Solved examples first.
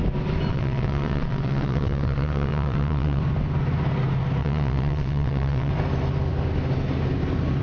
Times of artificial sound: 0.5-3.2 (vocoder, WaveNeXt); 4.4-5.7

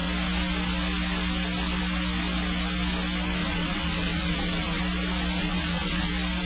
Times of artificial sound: 3.4-4.8 (vocoder, WaveNeXt); 5.4-6.1